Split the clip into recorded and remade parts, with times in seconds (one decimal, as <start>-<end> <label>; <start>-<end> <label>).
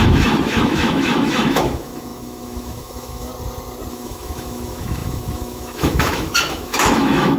0.0-3.3 remade; 3.3-3.9 recorded; 3.9-7.4 remade